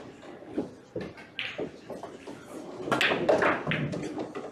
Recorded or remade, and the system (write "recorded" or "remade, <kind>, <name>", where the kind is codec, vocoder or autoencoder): recorded